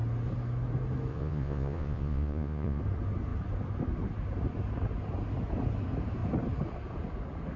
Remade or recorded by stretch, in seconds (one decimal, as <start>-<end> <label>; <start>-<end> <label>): 0.0-1.1 recorded; 1.1-2.8 remade; 2.8-7.6 recorded